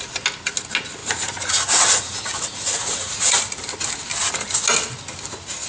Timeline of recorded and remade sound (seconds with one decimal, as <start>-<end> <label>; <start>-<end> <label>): 0.0-1.0 recorded; 1.0-3.4 remade; 3.4-5.7 recorded